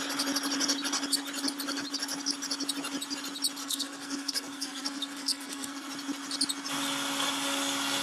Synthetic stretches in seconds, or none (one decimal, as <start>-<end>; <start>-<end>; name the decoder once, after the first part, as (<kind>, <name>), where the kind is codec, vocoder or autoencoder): 3.6-5.9 (codec, SNAC)